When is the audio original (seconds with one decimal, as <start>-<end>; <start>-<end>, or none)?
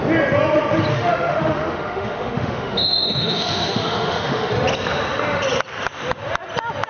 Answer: 0.0-0.9; 4.5-6.9